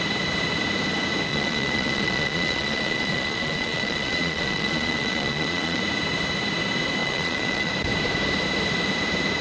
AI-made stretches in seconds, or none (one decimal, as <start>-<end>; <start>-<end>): 1.3-5.8; 7.0-7.7